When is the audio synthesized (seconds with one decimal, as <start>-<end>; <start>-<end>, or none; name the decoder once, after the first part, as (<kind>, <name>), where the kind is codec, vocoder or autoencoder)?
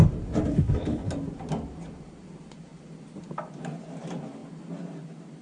0.5-1.1 (codec, HILCodec)